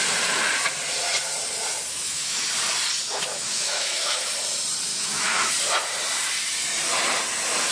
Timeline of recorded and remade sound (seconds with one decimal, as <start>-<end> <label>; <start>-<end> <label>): 0.0-1.9 recorded; 1.9-2.5 remade; 2.5-3.1 recorded; 3.1-4.2 remade; 4.2-4.9 recorded; 4.9-5.5 remade; 5.5-7.7 recorded